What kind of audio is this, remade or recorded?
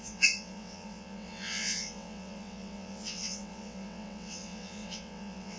remade